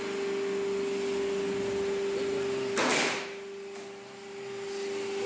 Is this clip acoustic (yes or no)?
yes